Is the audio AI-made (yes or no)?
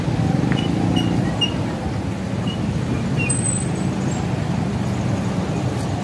no